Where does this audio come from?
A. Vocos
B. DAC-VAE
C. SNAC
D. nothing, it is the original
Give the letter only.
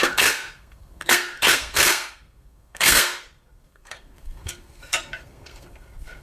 C